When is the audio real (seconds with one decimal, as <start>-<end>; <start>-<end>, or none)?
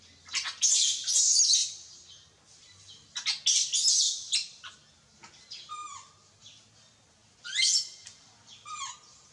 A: 0.0-3.9; 4.6-5.8; 6.7-7.2